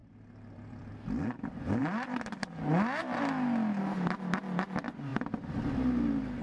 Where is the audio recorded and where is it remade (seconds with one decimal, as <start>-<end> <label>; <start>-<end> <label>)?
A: 0.0-0.9 remade; 0.9-1.8 recorded; 1.8-2.5 remade; 2.5-6.4 recorded